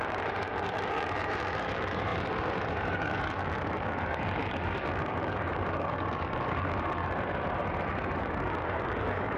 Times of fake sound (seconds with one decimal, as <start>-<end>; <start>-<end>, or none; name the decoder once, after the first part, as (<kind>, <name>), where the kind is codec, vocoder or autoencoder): 0.0-7.0 (codec, DAC); 8.2-9.4